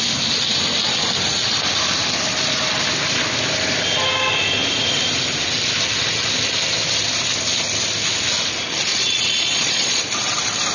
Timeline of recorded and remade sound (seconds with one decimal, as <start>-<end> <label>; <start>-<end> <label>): 0.0-8.9 recorded; 8.9-10.0 remade; 10.0-10.7 recorded